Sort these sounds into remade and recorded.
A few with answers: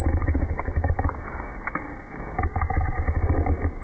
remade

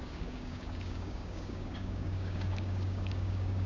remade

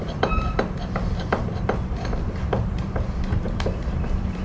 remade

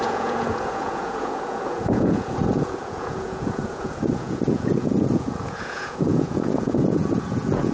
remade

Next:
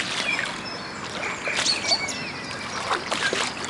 recorded